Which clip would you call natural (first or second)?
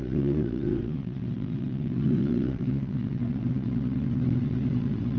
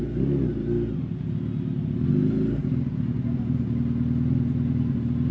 second